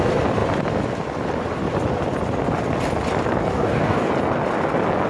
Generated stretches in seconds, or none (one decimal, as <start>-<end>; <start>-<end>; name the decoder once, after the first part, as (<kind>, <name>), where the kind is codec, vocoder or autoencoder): 3.5-4.1 (codec, DAC)

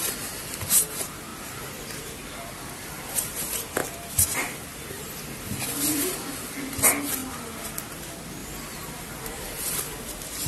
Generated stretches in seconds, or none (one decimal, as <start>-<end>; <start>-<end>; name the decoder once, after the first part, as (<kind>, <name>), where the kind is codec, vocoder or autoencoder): 8.4-9.7 (vocoder, BigVGAN v2)